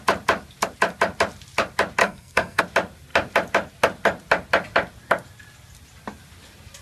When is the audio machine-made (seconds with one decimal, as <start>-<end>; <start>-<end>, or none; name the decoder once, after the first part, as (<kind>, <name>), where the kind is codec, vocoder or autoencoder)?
2.0-2.6 (codec, SNAC)